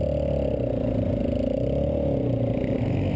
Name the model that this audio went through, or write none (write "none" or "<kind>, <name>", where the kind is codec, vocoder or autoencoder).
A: none